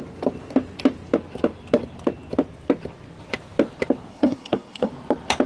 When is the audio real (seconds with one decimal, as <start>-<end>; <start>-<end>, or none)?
0.0-4.1; 4.9-5.5